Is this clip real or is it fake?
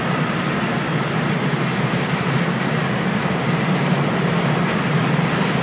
real